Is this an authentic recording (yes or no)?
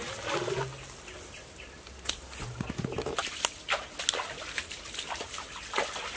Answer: yes